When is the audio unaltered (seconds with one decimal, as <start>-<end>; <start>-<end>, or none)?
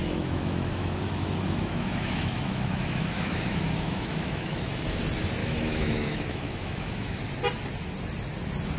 5.0-5.4; 7.2-8.8